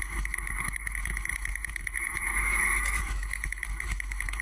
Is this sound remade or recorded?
remade